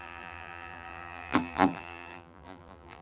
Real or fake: fake